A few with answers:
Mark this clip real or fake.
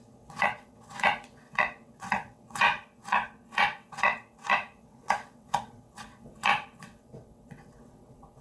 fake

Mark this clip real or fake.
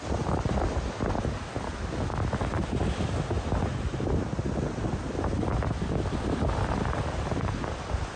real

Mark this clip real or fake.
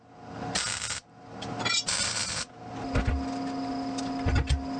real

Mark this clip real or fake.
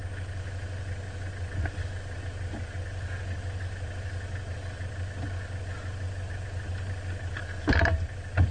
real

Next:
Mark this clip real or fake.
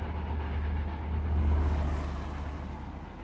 real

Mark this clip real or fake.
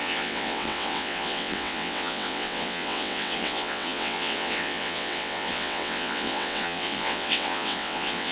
fake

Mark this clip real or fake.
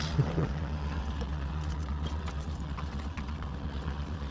fake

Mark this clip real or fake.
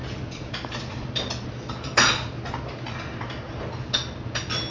real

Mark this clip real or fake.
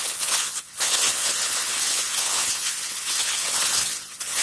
fake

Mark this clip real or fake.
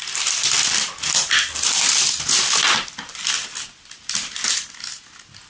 real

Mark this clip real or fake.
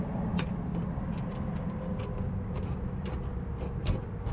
real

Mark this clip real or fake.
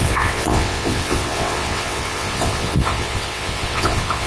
fake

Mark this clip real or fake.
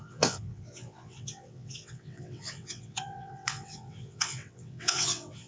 fake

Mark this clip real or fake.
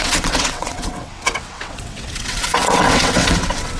fake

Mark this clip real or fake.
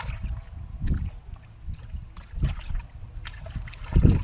real